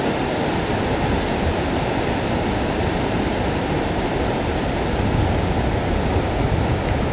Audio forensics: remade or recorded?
recorded